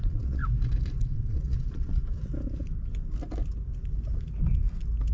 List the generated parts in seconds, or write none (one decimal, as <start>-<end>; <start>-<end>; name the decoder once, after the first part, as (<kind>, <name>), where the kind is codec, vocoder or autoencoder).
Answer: 0.0-0.4 (vocoder, Vocos); 1.0-2.0